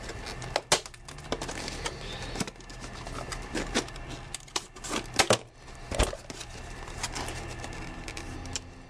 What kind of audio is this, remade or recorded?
recorded